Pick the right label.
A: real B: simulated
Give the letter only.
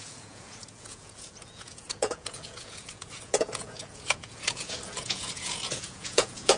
B